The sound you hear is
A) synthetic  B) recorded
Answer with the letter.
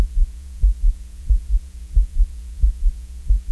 A